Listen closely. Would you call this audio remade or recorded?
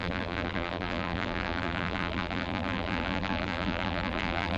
remade